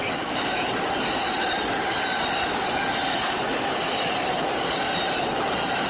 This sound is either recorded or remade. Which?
remade